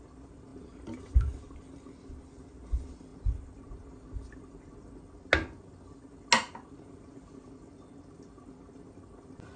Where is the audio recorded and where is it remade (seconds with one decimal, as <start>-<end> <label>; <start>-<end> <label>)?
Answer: 0.0-9.6 recorded